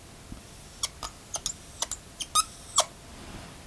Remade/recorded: recorded